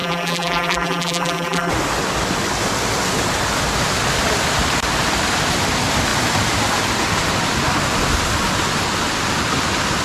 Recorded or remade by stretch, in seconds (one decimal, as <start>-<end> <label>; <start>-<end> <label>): 0.0-1.7 remade; 1.7-10.0 recorded